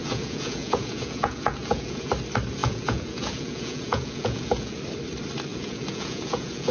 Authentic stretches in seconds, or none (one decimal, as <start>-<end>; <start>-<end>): 2.1-2.6; 4.8-5.5